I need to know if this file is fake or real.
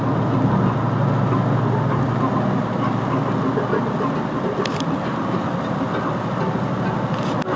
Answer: real